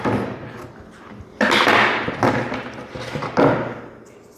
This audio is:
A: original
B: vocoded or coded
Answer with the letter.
A